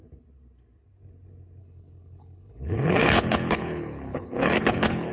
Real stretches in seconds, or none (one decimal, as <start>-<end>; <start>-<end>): 0.0-1.6